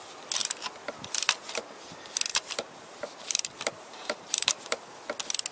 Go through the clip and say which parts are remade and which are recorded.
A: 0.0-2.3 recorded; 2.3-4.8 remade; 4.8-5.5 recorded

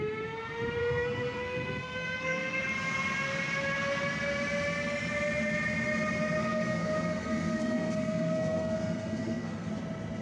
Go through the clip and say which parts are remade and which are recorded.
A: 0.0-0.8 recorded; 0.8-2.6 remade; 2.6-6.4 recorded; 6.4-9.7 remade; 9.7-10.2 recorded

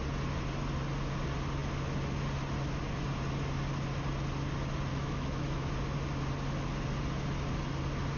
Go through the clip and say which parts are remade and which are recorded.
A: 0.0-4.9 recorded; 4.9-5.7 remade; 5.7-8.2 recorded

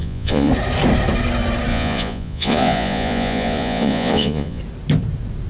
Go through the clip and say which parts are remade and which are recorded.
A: 0.0-0.5 remade; 0.5-1.7 recorded; 1.7-4.6 remade; 4.6-5.5 recorded

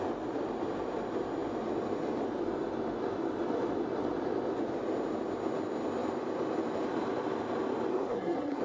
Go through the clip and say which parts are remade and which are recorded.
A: 0.0-7.9 recorded; 7.9-8.6 remade

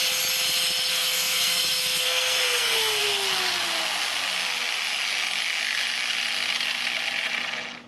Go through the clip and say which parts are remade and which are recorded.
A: 0.0-0.9 recorded; 0.9-3.0 remade; 3.0-7.9 recorded

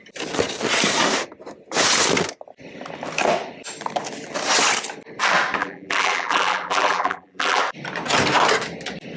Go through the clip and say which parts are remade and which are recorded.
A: 0.0-5.6 recorded; 5.6-7.6 remade; 7.6-9.2 recorded

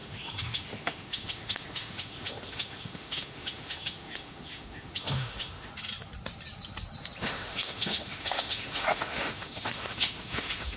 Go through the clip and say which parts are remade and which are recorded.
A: 0.0-5.7 remade; 5.7-7.2 recorded; 7.2-10.8 remade